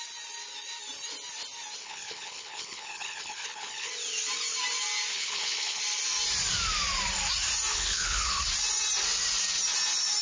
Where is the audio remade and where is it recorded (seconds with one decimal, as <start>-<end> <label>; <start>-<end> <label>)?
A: 0.0-1.8 recorded; 1.8-3.9 remade; 3.9-5.1 recorded; 5.1-5.8 remade; 5.8-7.7 recorded; 7.7-8.4 remade; 8.4-10.2 recorded